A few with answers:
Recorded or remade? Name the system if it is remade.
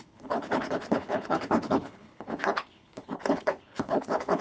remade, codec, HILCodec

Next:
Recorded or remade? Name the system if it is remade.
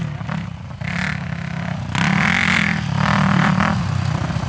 recorded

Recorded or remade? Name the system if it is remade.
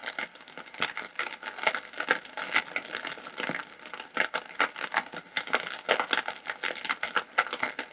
recorded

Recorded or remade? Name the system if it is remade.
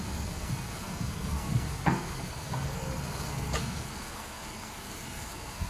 remade, codec, SNAC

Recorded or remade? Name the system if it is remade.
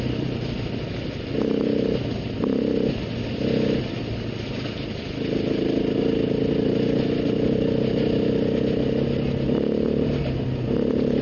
recorded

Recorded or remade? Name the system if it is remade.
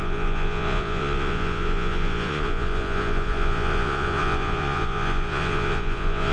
remade, vocoder, Vocos